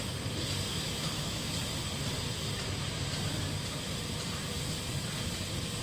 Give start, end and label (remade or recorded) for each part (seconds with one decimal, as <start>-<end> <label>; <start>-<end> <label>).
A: 0.0-0.7 recorded; 0.7-1.5 remade; 1.5-5.8 recorded